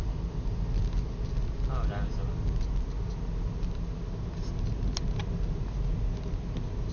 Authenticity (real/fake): real